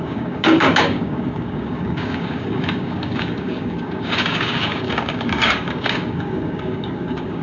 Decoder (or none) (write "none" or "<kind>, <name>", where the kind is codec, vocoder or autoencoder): codec, DAC